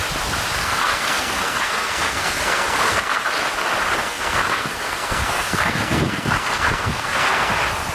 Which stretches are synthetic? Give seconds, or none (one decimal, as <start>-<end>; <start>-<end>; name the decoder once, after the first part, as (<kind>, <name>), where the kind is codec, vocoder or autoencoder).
0.6-3.2 (codec, SNAC); 4.0-7.5